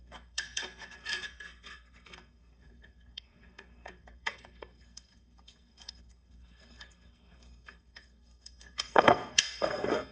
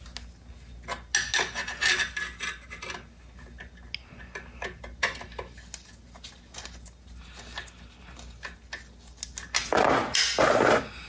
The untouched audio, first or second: second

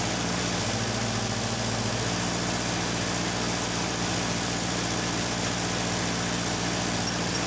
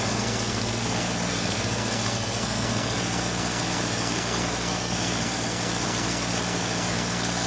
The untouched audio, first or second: first